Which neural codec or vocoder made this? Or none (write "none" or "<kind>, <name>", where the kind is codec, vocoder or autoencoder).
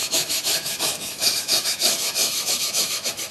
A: autoencoder, DAC-VAE